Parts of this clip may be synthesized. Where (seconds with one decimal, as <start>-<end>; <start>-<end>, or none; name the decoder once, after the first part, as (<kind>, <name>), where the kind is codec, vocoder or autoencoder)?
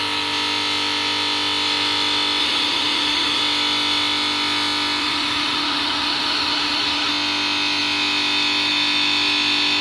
2.4-3.4 (autoencoder, DAC-VAE); 5.0-7.1